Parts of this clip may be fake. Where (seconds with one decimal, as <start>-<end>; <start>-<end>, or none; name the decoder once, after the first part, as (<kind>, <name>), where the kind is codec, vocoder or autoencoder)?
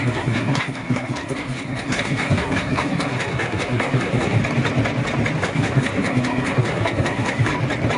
0.0-4.4 (codec, SNAC); 5.4-7.5